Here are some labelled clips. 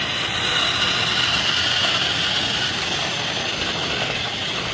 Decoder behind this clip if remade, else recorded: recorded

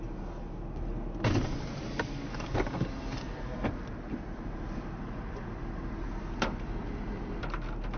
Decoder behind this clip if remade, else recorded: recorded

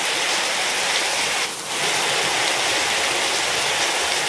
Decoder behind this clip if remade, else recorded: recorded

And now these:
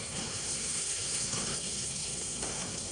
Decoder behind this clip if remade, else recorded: remade, codec, SNAC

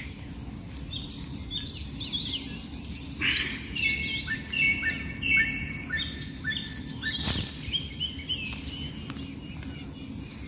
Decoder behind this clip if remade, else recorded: recorded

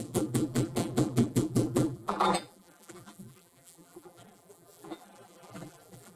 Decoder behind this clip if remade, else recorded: remade, vocoder, BigVGAN v2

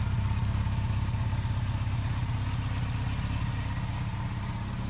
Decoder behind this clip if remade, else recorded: recorded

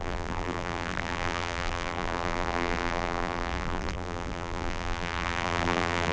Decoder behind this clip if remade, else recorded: remade, vocoder, BigVGAN v2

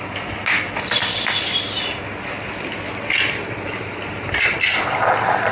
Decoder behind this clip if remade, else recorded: recorded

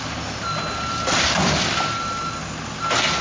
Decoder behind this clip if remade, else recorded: recorded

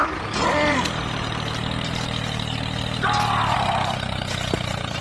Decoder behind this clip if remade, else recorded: recorded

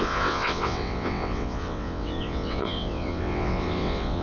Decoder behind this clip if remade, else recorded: remade, vocoder, WaveNeXt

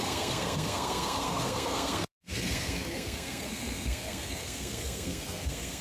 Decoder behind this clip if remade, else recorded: remade, codec, SNAC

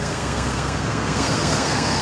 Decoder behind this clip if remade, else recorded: remade, codec, SNAC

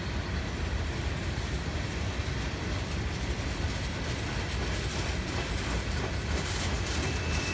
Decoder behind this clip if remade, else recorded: recorded